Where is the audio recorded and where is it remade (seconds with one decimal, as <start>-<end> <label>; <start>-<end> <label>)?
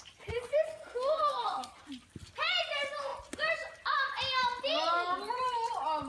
0.0-0.7 recorded; 0.7-1.7 remade; 1.7-6.1 recorded